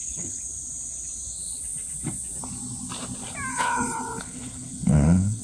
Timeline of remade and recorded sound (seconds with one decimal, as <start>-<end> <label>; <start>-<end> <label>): 0.0-0.5 remade; 0.5-3.5 recorded; 3.5-5.4 remade